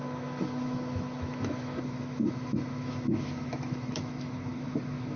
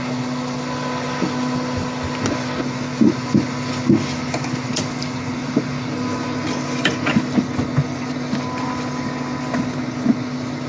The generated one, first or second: first